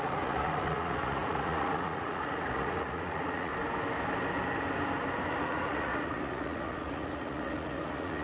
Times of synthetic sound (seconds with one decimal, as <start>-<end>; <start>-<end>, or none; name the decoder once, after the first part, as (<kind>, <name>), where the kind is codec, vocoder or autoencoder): 0.0-3.5 (vocoder, Vocos); 5.4-8.2